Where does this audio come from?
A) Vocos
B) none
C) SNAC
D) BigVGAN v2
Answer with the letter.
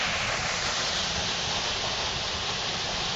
B